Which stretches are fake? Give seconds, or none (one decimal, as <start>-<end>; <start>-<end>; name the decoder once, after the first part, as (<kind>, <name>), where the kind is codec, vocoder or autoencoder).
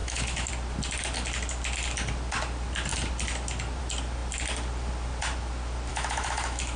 0.0-0.5 (autoencoder, DAC-VAE); 5.9-6.8